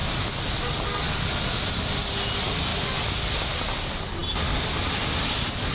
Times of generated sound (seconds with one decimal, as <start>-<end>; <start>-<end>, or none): none